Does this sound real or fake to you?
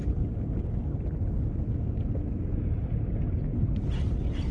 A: real